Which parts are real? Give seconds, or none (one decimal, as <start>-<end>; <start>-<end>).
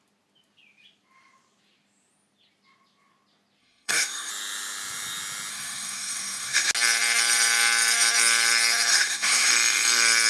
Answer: 0.0-3.6; 4.3-5.5; 6.7-8.9; 9.5-10.3